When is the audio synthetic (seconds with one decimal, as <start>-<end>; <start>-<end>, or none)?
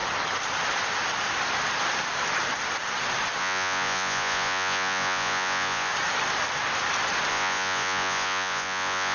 3.4-5.9; 7.3-9.1